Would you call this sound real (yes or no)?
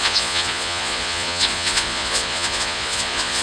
no